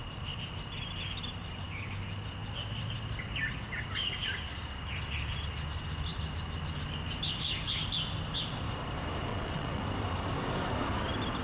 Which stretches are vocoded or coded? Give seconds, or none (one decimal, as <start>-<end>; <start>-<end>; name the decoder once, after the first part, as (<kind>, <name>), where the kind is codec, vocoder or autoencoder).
9.3-9.8 (vocoder, WaveNeXt)